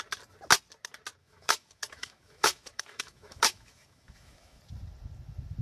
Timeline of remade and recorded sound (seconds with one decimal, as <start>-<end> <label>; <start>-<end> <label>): 0.0-1.2 recorded; 1.2-4.6 remade; 4.6-5.6 recorded